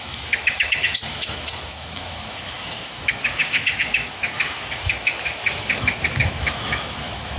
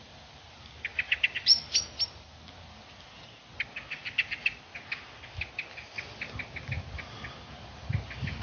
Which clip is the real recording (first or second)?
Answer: second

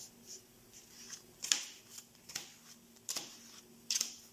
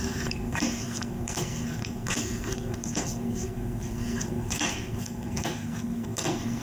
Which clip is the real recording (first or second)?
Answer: first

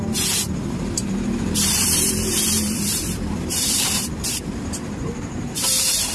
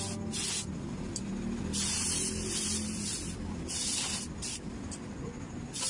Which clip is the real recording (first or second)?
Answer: second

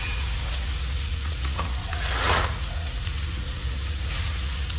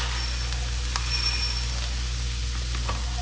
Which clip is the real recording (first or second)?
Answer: second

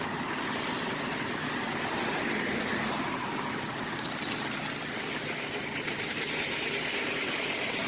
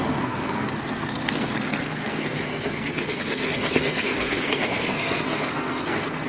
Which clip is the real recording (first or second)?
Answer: first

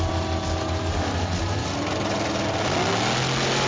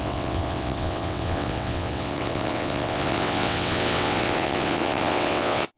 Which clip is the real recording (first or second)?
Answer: first